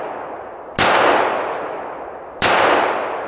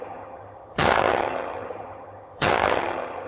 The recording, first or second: first